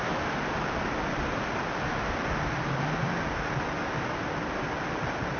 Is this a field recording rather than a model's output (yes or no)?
yes